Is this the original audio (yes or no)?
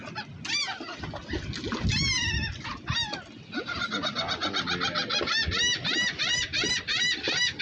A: yes